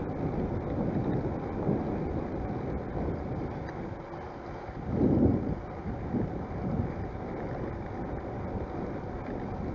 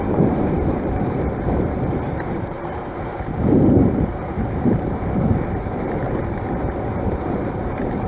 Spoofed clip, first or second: second